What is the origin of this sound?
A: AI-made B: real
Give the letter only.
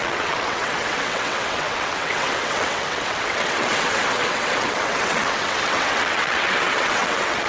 A